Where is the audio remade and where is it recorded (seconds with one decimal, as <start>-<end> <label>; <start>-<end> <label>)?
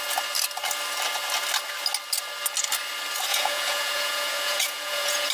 0.0-3.3 recorded; 3.3-5.3 remade